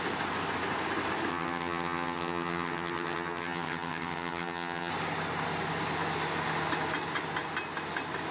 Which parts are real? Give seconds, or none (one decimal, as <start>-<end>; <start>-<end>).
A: 0.0-1.3; 4.9-8.3